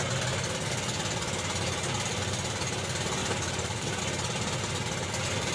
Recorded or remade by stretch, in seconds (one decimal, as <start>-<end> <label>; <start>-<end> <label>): 0.0-3.2 recorded; 3.2-4.0 remade; 4.0-5.5 recorded